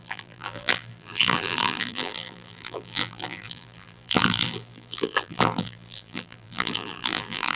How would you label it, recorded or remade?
remade